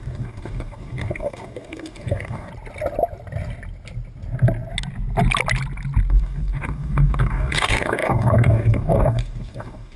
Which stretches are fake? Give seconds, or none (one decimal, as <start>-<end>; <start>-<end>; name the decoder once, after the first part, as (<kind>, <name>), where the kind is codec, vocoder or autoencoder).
0.0-2.5 (codec, DAC); 6.1-10.0